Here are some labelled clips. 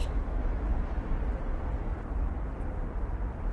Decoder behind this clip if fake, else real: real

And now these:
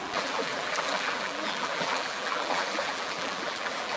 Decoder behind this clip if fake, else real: fake, vocoder, BigVGAN v2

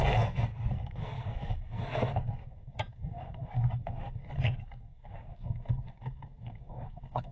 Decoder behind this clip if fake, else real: fake, codec, SNAC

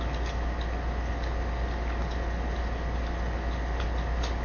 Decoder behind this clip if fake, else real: real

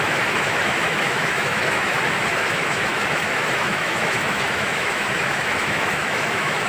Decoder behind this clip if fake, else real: fake, autoencoder, DAC-VAE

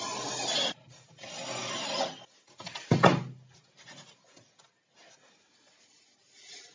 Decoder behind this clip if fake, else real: real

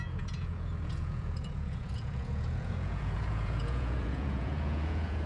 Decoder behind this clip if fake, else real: fake, vocoder, Vocos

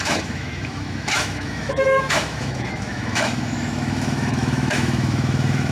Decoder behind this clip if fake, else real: fake, autoencoder, DAC-VAE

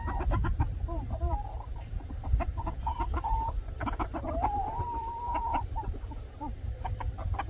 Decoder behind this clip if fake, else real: fake, vocoder, BigVGAN v2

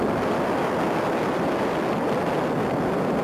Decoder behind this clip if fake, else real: real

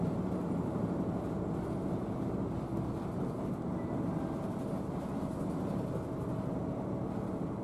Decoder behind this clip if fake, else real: real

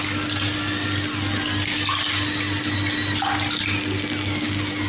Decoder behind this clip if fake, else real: real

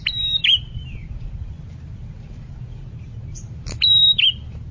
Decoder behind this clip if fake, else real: fake, vocoder, BigVGAN v2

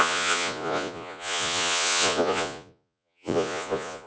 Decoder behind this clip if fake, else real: fake, vocoder, Vocos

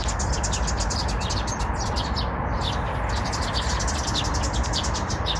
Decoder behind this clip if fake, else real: real